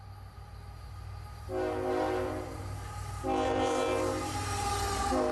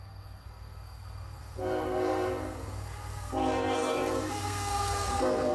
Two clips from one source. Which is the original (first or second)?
first